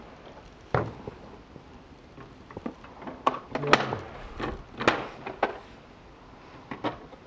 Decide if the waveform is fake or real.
real